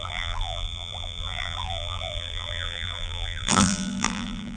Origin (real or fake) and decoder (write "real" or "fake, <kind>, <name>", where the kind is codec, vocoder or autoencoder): fake, vocoder, BigVGAN v2